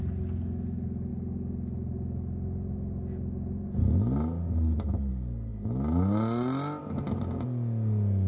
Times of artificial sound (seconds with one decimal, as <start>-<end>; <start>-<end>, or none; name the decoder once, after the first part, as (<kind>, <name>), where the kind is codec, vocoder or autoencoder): none